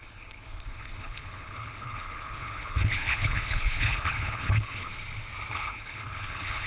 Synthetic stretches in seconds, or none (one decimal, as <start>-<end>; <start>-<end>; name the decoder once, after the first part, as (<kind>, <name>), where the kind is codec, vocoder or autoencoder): 0.0-4.9 (codec, HILCodec); 5.5-6.7